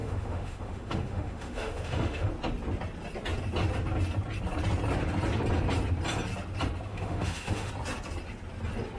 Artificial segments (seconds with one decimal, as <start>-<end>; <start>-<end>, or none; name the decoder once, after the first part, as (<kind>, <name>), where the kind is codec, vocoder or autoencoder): 0.0-2.3 (autoencoder, DAC-VAE); 6.9-7.7